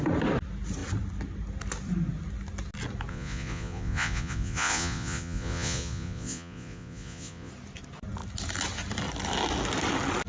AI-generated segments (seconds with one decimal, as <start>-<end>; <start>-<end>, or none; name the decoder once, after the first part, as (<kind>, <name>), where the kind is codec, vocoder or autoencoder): 3.1-7.5 (vocoder, Vocos)